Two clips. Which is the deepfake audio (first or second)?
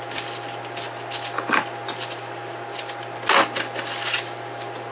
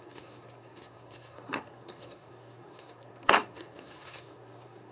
second